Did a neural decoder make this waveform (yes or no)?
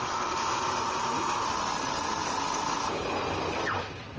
no